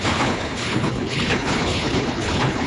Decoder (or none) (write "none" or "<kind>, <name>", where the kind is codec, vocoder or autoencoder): codec, HILCodec